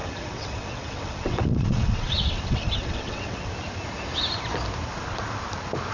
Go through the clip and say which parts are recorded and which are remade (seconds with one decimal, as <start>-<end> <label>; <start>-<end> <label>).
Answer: 0.0-3.5 remade; 3.5-5.9 recorded